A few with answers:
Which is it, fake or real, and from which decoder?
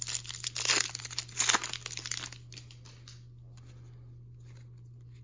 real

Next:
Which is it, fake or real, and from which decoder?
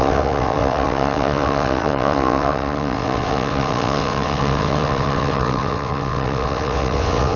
fake, vocoder, WaveNeXt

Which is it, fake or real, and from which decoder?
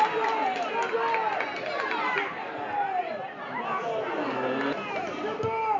real